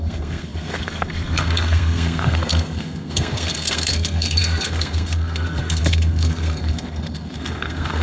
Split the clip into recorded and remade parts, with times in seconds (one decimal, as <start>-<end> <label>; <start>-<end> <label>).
0.0-8.0 remade

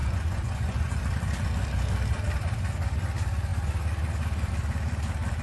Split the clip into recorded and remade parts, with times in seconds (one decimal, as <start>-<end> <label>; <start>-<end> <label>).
0.0-1.0 remade; 1.0-5.4 recorded

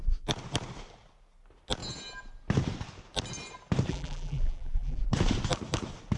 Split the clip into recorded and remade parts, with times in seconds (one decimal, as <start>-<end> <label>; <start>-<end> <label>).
0.0-3.9 recorded; 3.9-5.0 remade; 5.0-6.2 recorded

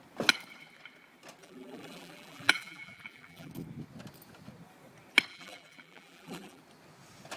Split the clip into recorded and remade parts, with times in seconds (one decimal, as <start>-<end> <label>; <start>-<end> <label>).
0.0-1.4 recorded; 1.4-3.5 remade; 3.5-5.3 recorded; 5.3-6.6 remade; 6.6-7.4 recorded

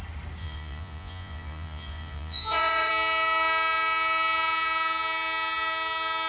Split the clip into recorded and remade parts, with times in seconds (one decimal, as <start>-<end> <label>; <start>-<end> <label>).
0.0-0.4 recorded; 0.4-2.9 remade; 2.9-6.3 recorded

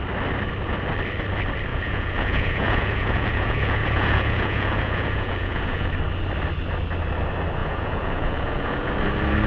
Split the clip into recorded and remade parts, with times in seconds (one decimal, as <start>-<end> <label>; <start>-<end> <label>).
0.0-1.7 recorded; 1.7-5.9 remade; 5.9-7.6 recorded; 7.6-8.9 remade; 8.9-9.5 recorded

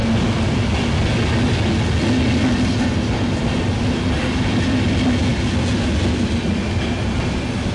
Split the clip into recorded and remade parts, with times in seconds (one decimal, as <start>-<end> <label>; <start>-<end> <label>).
0.0-7.7 recorded

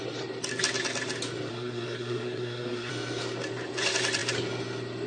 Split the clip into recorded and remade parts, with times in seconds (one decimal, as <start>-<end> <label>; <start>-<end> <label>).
0.0-1.5 recorded; 1.5-2.9 remade; 2.9-5.1 recorded